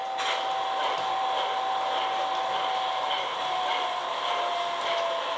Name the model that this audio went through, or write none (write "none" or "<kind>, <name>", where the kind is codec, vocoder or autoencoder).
none